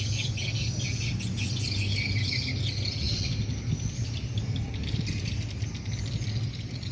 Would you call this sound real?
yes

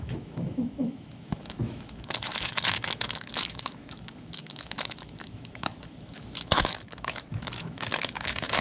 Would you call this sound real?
no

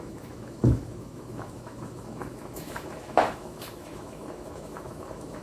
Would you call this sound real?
no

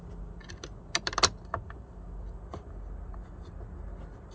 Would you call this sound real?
yes